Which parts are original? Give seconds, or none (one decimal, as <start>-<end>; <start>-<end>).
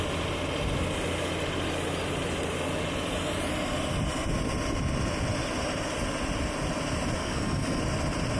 0.0-7.2; 7.8-8.4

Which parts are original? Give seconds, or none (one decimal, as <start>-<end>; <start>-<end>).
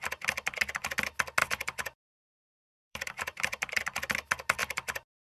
0.0-1.4; 3.8-4.6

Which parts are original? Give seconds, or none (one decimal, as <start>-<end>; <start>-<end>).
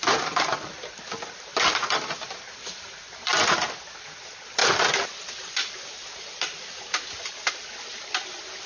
0.0-8.7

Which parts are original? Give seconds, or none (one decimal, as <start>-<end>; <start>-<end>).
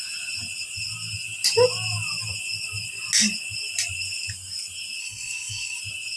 0.0-5.0; 5.8-6.2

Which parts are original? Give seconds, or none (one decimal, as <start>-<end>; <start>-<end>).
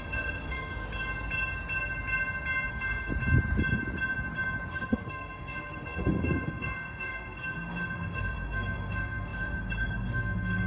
0.7-2.7; 3.1-4.7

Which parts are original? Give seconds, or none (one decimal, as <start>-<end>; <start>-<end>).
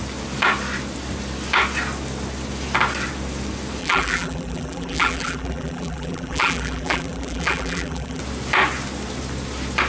0.0-3.8; 8.2-9.9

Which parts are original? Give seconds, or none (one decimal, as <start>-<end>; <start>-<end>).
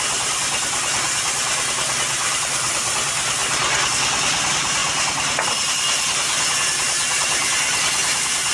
0.0-8.5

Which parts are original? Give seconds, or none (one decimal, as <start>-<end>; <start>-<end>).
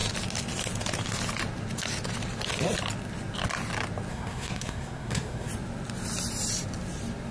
0.0-4.1; 5.5-7.3